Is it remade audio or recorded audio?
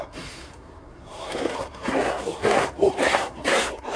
remade